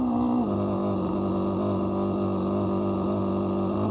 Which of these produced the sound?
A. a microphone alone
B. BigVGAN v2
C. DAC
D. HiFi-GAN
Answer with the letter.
A